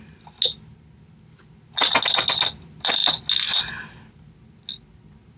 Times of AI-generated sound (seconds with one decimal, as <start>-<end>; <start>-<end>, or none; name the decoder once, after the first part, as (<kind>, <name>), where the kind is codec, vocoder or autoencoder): none